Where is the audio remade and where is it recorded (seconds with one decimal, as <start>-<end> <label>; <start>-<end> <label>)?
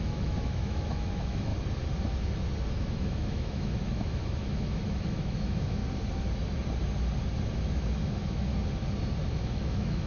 0.0-1.5 remade; 1.5-2.8 recorded; 2.8-5.8 remade; 5.8-7.7 recorded; 7.7-8.5 remade; 8.5-9.3 recorded; 9.3-10.1 remade